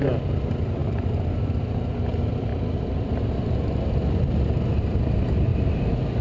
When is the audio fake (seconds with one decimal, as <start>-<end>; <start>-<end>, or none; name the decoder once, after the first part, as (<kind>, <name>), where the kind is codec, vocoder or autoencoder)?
0.8-1.4 (vocoder, BigVGAN v2); 5.5-6.2